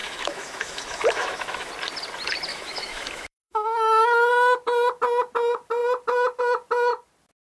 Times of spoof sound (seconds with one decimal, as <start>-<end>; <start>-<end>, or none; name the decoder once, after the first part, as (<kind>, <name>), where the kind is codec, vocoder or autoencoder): 0.0-1.7 (autoencoder, DAC-VAE); 2.5-4.3